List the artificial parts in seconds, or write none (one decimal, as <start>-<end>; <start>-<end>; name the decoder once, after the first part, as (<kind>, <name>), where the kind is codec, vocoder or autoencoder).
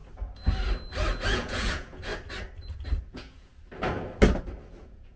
1.3-2.1 (vocoder, Vocos); 3.0-3.5; 4.8-5.2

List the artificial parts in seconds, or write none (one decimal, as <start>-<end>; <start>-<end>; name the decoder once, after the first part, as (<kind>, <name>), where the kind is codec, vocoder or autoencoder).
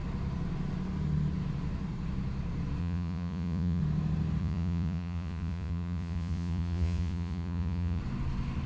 2.8-3.8 (vocoder, Vocos); 4.4-8.0